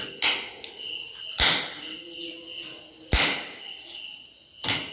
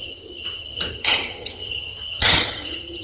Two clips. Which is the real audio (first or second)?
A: first